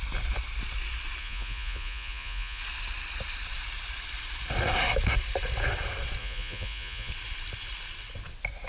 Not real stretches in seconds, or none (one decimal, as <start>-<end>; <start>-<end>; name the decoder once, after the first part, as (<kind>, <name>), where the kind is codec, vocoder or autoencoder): 1.2-2.6 (vocoder, Vocos); 6.2-7.1